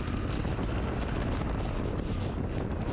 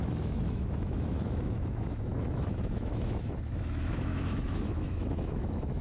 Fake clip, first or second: second